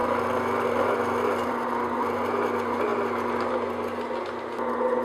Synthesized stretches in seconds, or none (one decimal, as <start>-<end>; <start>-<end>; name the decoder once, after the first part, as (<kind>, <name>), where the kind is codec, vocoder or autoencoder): none